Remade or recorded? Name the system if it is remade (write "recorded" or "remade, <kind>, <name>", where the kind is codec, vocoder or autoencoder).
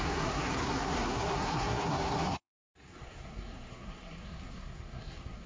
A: remade, codec, SNAC